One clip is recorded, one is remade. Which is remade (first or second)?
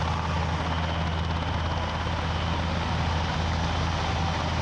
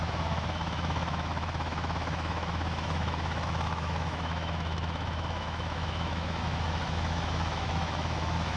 second